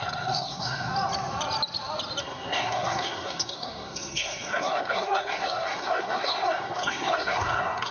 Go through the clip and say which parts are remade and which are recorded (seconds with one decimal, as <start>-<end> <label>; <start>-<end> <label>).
0.0-0.9 remade; 0.9-2.2 recorded; 2.2-7.9 remade